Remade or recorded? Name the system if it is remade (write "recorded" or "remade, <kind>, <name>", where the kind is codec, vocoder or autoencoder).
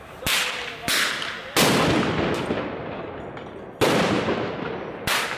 recorded